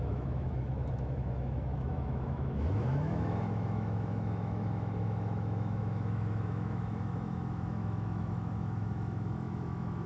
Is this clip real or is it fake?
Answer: fake